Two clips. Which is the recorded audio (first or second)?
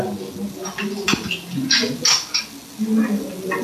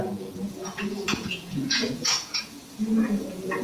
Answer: first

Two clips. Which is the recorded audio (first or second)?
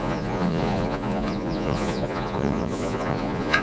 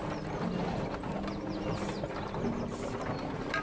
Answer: second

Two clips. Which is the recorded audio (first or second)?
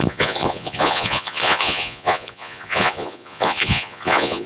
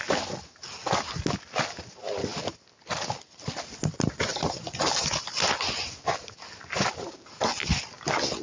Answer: second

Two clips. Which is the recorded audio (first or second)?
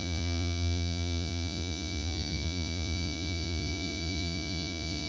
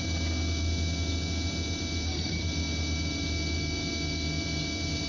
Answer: second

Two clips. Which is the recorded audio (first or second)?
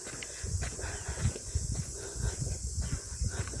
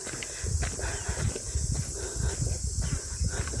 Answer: second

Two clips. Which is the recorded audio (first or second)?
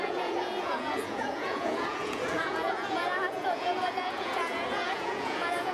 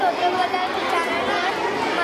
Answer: second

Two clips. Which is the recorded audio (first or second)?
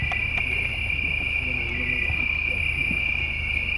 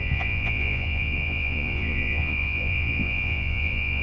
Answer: first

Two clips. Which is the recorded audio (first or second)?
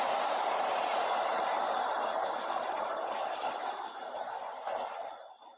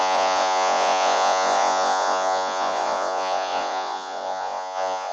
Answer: first